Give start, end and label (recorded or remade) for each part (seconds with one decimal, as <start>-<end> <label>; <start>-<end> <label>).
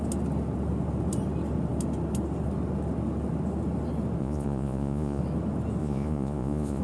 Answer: 0.0-4.2 recorded; 4.2-5.2 remade; 5.2-5.8 recorded; 5.8-6.8 remade